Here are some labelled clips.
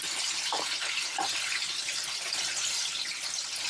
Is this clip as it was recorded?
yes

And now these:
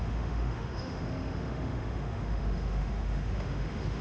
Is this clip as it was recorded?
no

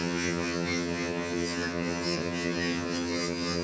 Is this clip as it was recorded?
no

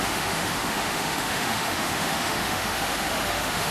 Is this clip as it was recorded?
no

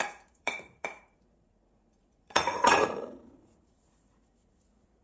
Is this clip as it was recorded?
no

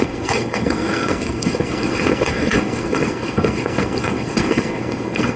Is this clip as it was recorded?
no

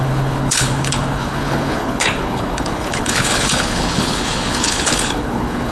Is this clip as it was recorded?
no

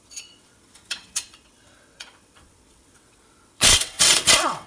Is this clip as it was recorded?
no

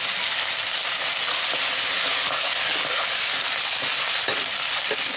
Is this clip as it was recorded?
yes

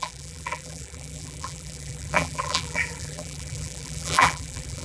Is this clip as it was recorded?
no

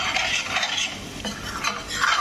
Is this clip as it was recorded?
yes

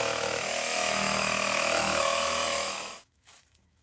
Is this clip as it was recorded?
no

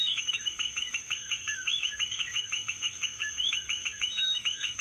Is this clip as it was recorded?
no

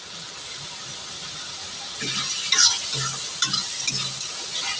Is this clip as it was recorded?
yes